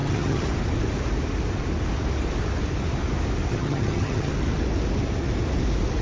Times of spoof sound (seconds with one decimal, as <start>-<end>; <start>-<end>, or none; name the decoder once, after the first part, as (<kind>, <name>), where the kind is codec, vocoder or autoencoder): 0.0-0.5 (vocoder, HiFi-GAN); 3.5-4.3